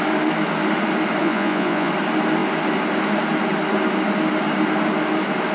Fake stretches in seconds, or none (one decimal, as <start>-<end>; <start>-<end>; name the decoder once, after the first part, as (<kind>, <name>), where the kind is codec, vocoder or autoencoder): 1.2-1.9 (vocoder, Vocos)